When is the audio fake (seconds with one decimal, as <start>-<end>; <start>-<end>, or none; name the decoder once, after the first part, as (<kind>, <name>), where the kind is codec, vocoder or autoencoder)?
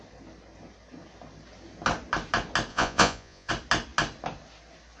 2.7-3.5 (vocoder, Vocos)